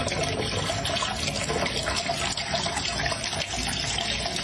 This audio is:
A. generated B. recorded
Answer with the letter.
B